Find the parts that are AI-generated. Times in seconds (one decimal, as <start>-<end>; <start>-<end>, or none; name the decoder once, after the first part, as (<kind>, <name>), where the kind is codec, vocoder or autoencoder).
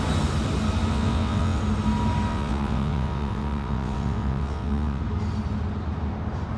0.9-1.6 (vocoder, WaveNeXt); 2.3-5.0